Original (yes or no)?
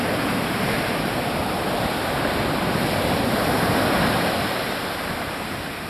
no